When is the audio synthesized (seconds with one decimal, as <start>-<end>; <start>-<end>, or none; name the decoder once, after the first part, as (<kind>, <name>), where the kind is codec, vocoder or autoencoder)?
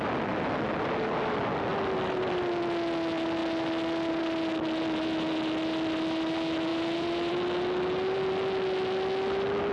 1.7-2.5 (vocoder, BigVGAN v2); 6.7-7.3